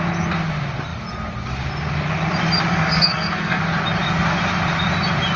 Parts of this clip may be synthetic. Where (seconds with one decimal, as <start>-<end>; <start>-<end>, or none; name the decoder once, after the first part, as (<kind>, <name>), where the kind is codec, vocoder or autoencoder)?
2.7-3.6 (codec, SNAC)